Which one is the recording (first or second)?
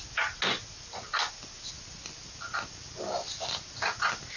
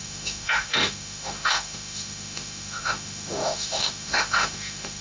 first